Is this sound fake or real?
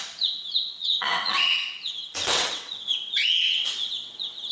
fake